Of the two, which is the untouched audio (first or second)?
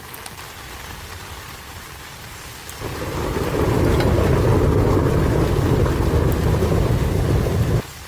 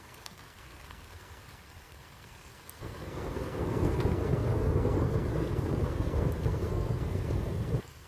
first